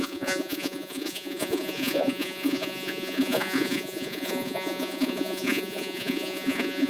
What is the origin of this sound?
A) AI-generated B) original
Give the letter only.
A